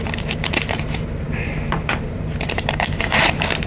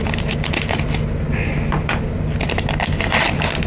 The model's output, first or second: first